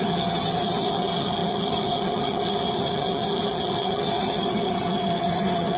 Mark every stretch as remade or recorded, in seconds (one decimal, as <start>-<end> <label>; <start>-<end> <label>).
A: 0.0-5.8 remade